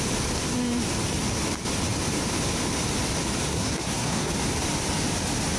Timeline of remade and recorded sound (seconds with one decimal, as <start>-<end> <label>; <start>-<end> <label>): 0.0-3.5 recorded; 3.5-4.3 remade; 4.3-5.6 recorded